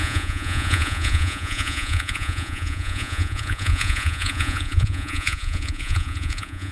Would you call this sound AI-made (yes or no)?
yes